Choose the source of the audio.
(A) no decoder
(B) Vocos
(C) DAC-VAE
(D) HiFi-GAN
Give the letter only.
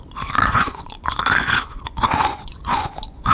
B